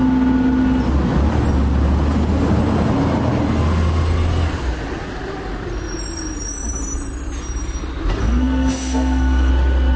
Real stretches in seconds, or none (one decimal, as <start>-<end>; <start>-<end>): 0.0-8.2; 9.5-10.0